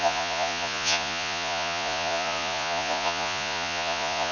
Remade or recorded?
remade